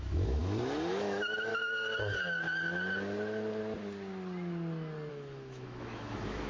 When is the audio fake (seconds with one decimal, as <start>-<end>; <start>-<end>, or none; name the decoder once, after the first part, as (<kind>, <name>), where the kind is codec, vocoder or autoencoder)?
0.0-0.4 (autoencoder, DAC-VAE); 0.9-1.5; 5.1-6.5